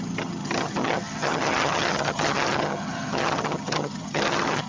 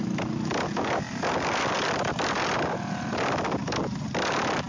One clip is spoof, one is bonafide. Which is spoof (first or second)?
first